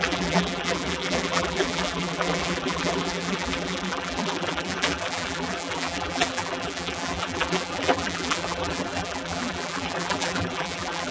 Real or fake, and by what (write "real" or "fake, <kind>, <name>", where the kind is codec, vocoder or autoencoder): fake, vocoder, BigVGAN v2